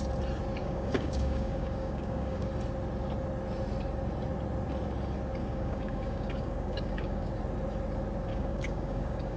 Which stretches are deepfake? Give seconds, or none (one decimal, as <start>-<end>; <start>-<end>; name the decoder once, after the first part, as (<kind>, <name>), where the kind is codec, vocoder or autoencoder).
0.6-2.5 (codec, DAC); 5.4-7.3; 8.3-9.4